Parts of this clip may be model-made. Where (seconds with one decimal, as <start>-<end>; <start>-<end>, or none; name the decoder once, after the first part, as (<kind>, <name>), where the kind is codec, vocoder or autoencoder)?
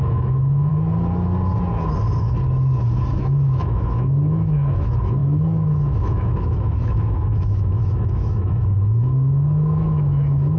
0.0-0.7 (autoencoder, DAC-VAE); 3.2-10.6